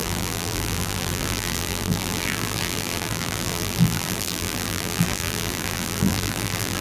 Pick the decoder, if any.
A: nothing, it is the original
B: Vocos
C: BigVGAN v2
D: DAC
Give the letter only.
C